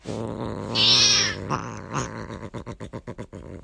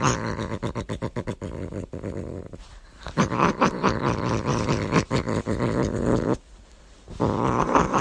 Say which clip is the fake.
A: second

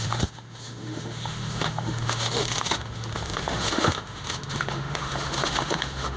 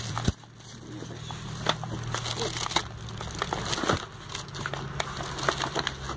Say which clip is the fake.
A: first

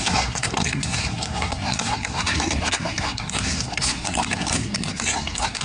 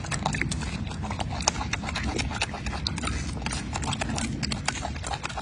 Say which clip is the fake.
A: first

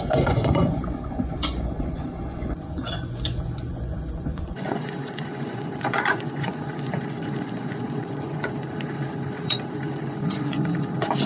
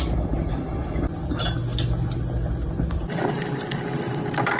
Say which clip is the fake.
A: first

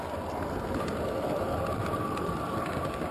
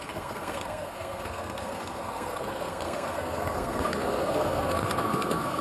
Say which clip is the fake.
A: second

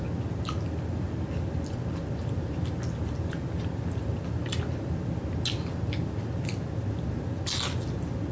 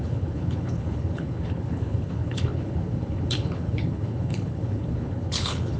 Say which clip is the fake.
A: second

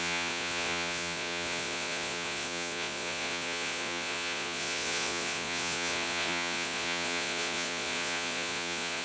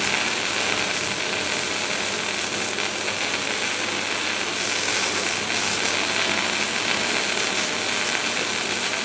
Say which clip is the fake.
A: first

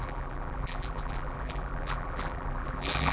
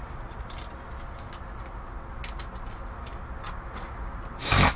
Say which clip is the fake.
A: first